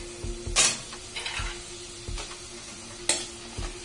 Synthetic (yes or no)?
no